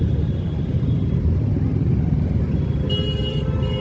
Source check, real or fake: real